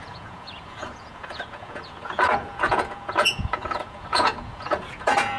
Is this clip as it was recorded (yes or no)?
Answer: no